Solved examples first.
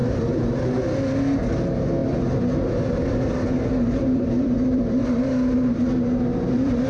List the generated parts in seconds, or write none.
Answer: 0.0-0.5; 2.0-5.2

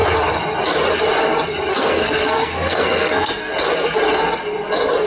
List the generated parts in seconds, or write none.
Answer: 1.7-3.5

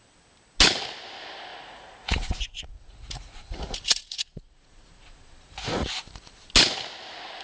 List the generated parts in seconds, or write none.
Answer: 1.5-5.9

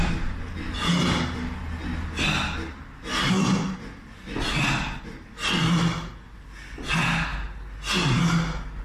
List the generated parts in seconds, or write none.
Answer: none

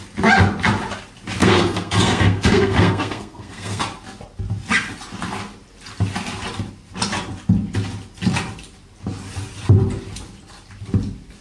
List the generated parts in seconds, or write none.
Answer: 1.4-3.8